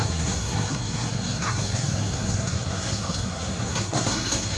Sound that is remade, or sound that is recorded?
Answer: remade